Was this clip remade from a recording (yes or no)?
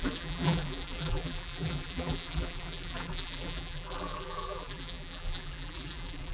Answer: yes